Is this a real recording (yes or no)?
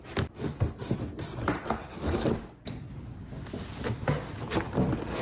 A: yes